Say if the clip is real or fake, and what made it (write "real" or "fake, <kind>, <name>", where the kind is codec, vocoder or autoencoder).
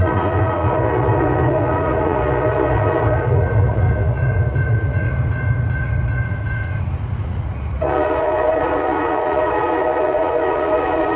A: fake, vocoder, Vocos